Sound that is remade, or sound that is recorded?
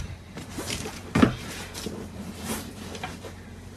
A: remade